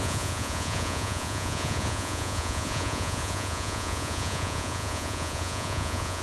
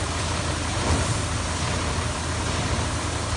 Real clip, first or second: second